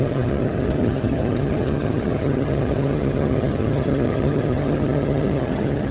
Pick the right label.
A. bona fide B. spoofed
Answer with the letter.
B